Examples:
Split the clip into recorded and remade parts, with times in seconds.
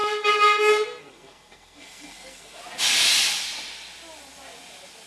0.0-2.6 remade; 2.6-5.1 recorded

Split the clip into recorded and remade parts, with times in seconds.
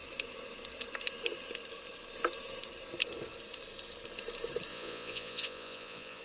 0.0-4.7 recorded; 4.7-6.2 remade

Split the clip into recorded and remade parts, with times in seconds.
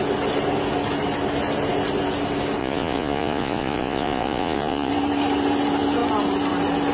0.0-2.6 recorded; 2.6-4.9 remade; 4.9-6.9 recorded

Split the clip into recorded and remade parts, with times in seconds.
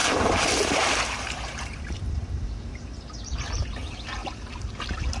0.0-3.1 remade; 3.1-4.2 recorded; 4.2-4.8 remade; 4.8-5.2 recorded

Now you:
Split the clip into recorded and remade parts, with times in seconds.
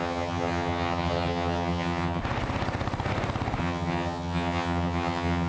0.0-2.2 remade; 2.2-3.6 recorded; 3.6-5.5 remade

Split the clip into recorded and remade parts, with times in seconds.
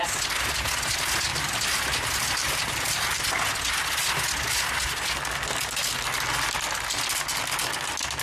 0.0-1.3 recorded; 1.3-3.2 remade; 3.2-8.2 recorded